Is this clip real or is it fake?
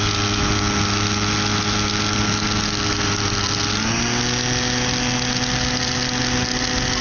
real